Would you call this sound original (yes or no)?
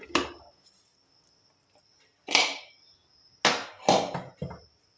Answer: yes